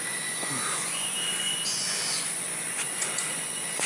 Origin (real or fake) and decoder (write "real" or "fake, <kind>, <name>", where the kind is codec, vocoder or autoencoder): fake, vocoder, Vocos